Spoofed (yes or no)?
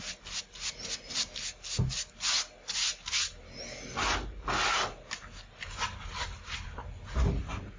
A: no